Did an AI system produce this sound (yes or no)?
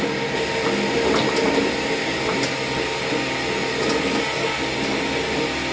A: no